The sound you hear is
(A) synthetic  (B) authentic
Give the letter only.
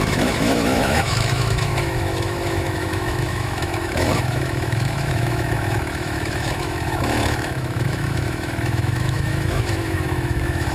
A